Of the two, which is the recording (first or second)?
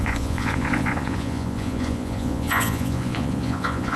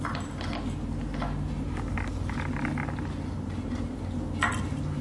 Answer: second